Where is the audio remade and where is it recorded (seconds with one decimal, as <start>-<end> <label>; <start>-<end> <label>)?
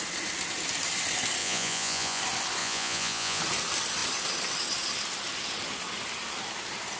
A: 0.0-1.4 recorded; 1.4-2.2 remade; 2.2-2.6 recorded; 2.6-3.4 remade; 3.4-7.0 recorded